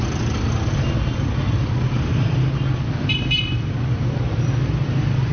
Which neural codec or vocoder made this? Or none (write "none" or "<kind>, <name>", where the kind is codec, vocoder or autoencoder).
none